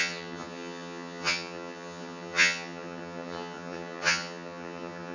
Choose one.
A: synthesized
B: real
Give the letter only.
A